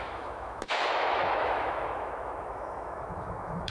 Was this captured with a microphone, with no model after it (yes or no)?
no